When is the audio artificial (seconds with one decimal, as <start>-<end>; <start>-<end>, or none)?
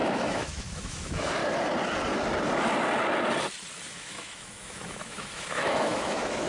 0.0-1.4; 3.9-6.5